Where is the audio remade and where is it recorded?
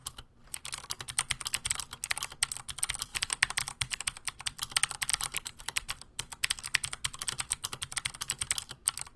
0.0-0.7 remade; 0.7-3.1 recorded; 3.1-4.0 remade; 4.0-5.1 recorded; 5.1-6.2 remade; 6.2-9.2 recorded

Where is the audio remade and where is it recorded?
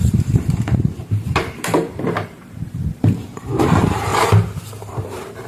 0.0-4.1 remade; 4.1-4.9 recorded; 4.9-5.5 remade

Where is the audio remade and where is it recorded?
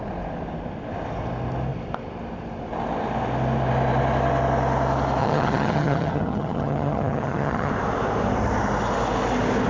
0.0-5.2 recorded; 5.2-7.7 remade; 7.7-9.7 recorded